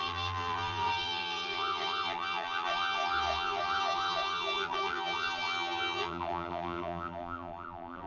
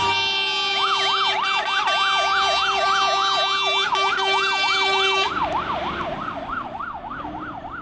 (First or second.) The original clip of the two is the second